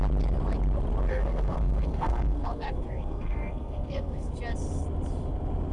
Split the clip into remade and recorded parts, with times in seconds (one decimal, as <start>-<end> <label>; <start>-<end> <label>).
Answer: 0.0-1.0 recorded; 1.0-4.3 remade; 4.3-5.7 recorded